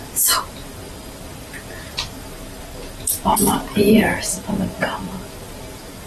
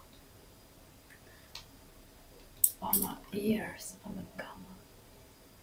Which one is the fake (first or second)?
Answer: first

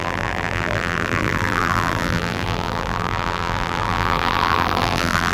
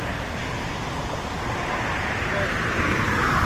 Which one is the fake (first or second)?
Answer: first